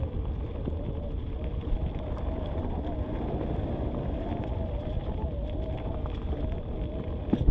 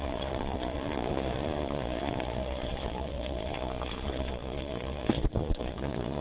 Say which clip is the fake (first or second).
second